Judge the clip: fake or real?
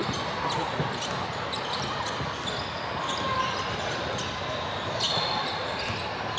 real